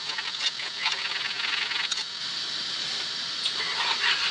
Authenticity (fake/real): real